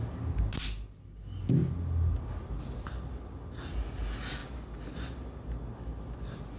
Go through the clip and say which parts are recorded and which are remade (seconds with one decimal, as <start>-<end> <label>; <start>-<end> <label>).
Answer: 0.0-6.6 recorded